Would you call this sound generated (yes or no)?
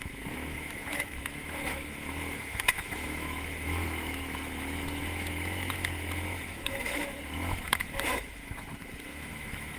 yes